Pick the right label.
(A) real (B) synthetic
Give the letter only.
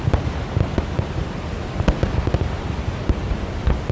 A